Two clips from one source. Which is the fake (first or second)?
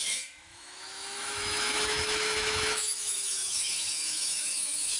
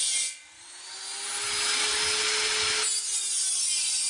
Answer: first